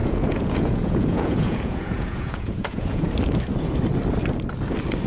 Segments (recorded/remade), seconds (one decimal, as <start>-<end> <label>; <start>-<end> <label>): 0.0-3.1 remade; 3.1-5.1 recorded